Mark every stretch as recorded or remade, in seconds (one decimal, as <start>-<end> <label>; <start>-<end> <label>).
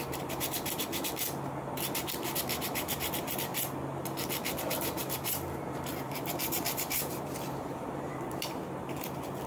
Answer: 0.0-0.9 remade; 0.9-2.6 recorded; 2.6-3.5 remade; 3.5-4.6 recorded; 4.6-9.5 remade